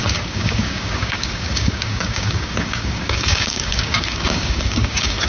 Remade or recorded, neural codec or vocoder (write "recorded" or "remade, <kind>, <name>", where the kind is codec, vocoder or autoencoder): remade, codec, DAC